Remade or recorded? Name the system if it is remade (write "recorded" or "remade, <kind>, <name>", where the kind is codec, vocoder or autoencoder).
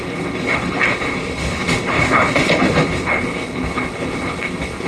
remade, codec, HILCodec